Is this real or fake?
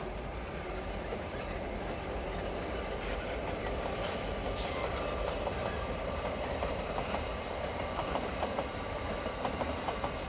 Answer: fake